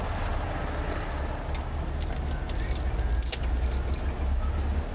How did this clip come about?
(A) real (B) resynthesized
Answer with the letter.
A